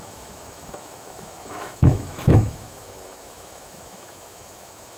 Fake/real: fake